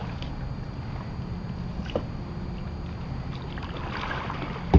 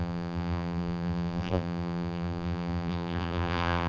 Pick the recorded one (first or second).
first